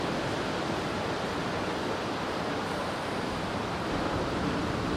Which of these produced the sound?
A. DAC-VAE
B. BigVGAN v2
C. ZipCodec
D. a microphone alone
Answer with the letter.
B